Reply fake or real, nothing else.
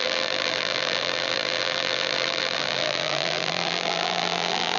fake